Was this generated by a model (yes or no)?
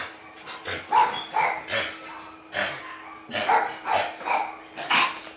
no